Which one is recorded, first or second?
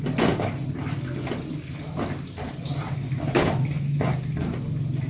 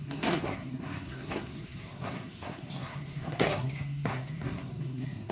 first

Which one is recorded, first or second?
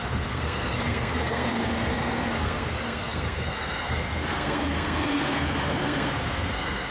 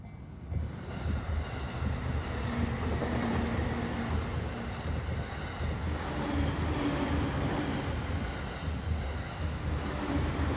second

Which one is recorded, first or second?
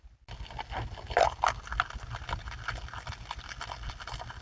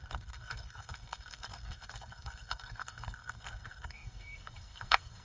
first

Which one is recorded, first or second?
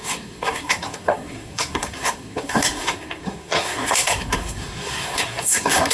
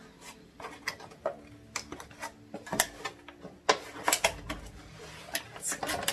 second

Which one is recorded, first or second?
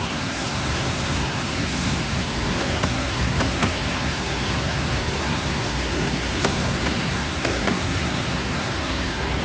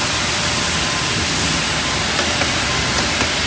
second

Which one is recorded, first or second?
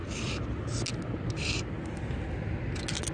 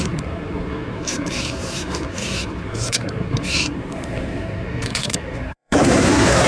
first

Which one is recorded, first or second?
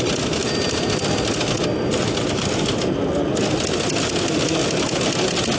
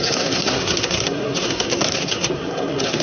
first